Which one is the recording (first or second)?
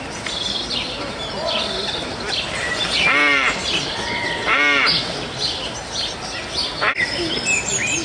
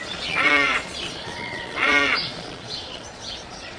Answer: first